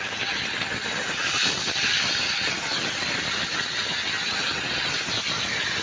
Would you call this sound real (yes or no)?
yes